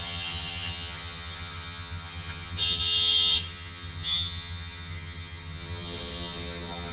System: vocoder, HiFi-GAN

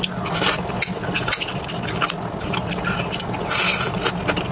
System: none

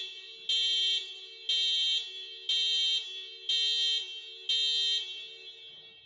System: none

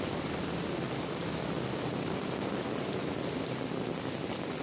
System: none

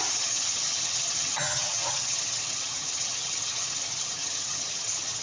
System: vocoder, HiFi-GAN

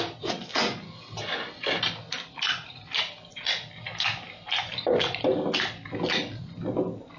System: none